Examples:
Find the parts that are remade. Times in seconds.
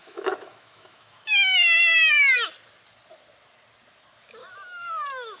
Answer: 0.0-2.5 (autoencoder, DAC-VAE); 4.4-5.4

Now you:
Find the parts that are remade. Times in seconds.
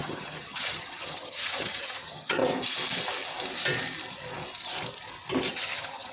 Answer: 0.0-2.4 (vocoder, HiFi-GAN); 5.5-6.1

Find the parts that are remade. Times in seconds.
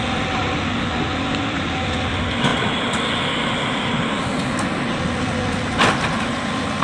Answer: none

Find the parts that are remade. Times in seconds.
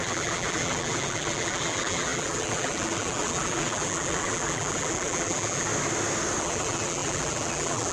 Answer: 0.0-5.7 (vocoder, BigVGAN v2); 6.4-7.9